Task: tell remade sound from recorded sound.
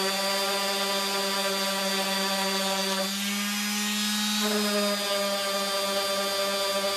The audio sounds recorded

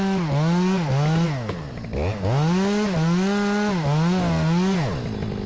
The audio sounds recorded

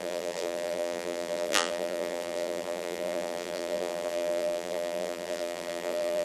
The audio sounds remade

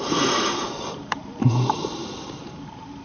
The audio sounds remade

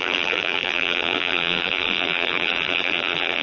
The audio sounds remade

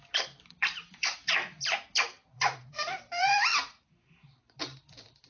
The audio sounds remade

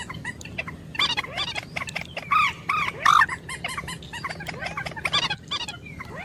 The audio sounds recorded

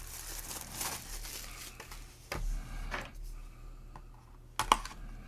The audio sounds recorded